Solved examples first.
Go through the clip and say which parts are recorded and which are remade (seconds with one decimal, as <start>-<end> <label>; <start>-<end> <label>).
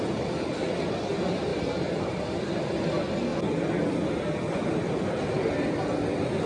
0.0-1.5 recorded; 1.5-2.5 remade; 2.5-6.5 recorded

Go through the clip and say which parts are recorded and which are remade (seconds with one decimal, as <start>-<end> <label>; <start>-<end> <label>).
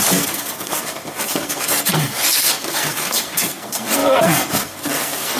0.0-5.4 remade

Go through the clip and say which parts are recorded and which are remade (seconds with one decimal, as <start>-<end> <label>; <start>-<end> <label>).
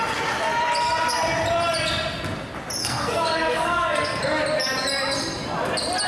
0.0-2.8 recorded; 2.8-4.2 remade; 4.2-6.1 recorded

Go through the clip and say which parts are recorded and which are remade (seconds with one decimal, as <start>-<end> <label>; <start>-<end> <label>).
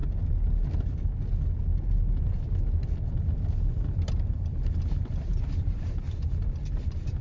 0.0-5.3 recorded; 5.3-6.3 remade; 6.3-7.2 recorded